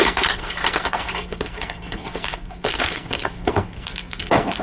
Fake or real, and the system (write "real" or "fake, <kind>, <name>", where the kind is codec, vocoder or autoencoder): fake, codec, SNAC